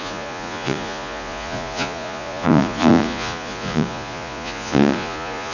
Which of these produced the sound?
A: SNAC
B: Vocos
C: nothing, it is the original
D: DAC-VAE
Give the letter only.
B